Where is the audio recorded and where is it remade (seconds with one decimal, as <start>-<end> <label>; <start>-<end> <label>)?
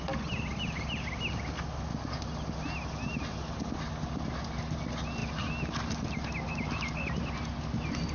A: 0.0-8.1 recorded